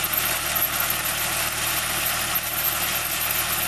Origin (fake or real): fake